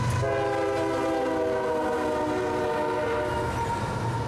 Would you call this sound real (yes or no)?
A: yes